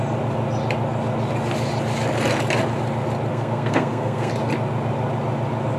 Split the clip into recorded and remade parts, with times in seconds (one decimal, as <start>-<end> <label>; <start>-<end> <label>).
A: 0.0-3.3 recorded; 3.3-4.3 remade; 4.3-5.8 recorded